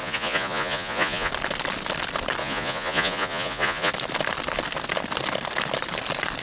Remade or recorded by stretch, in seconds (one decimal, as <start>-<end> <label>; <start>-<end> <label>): 0.0-1.3 remade; 1.3-2.4 recorded; 2.4-3.9 remade; 3.9-6.4 recorded